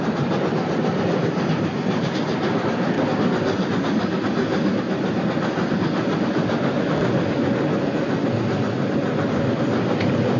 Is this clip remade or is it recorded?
recorded